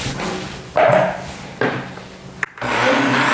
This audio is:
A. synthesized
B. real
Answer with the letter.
B